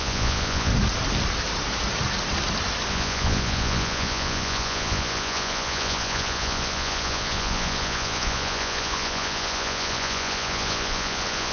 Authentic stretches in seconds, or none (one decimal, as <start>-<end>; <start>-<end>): 0.7-2.9